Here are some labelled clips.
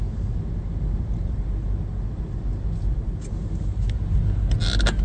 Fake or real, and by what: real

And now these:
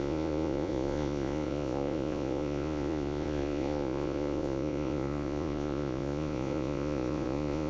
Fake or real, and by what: fake, vocoder, Vocos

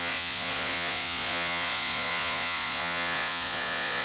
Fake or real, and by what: fake, vocoder, Vocos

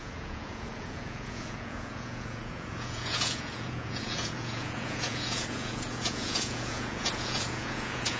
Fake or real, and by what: fake, vocoder, Vocos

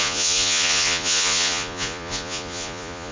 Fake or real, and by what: fake, vocoder, Vocos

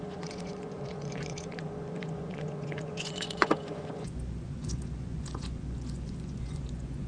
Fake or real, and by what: fake, vocoder, Vocos